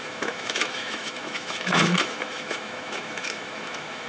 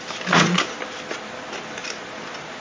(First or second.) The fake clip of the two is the first